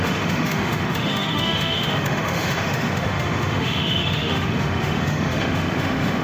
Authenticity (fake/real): fake